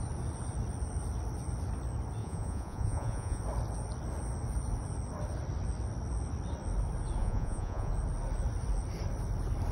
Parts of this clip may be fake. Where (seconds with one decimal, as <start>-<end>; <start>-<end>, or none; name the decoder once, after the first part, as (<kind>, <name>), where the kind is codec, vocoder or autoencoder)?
2.2-3.4 (vocoder, Vocos); 7.2-7.9

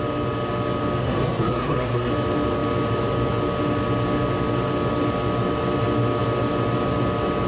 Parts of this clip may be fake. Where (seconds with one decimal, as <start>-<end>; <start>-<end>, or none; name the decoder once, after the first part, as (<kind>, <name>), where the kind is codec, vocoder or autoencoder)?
1.0-2.1 (codec, SNAC)

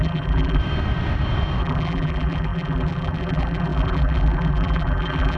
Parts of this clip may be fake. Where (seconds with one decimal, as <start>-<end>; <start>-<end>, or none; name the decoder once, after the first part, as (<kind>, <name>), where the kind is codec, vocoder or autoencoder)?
0.0-0.6 (vocoder, BigVGAN v2); 1.6-5.4

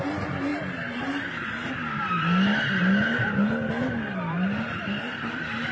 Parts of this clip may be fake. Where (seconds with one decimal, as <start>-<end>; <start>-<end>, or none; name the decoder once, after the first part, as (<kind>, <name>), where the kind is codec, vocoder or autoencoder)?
none